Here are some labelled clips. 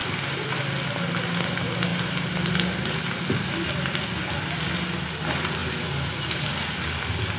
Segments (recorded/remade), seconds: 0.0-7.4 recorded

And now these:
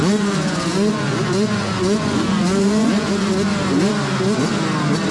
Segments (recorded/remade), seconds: 0.0-3.1 remade; 3.1-5.1 recorded

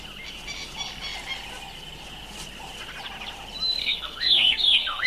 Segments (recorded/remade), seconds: 0.0-3.8 recorded; 3.8-5.1 remade

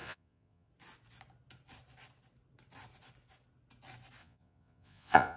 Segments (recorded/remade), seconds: 0.0-0.7 remade; 0.7-4.2 recorded; 4.2-5.4 remade

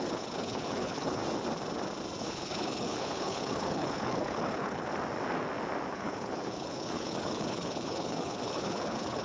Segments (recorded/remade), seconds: 0.0-1.2 remade; 1.2-2.2 recorded; 2.2-4.9 remade; 4.9-5.9 recorded; 5.9-9.2 remade